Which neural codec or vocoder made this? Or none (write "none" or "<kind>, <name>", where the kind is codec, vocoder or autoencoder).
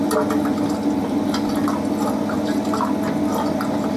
none